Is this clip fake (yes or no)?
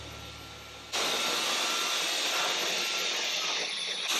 no